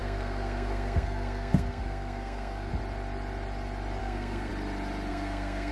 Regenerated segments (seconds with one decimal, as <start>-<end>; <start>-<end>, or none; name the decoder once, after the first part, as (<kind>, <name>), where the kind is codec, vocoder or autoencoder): 0.0-2.7 (codec, SNAC); 4.0-4.5; 5.1-5.7